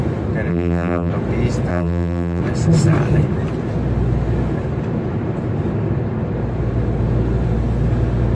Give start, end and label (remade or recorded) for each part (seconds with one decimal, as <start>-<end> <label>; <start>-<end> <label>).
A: 0.0-0.5 recorded; 0.5-1.1 remade; 1.1-1.7 recorded; 1.7-2.4 remade; 2.4-8.3 recorded